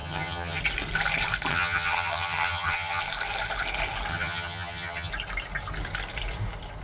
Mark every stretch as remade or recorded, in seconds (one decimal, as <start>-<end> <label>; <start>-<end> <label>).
0.0-0.6 remade; 0.6-1.5 recorded; 1.5-3.0 remade; 3.0-4.1 recorded; 4.1-5.1 remade; 5.1-6.8 recorded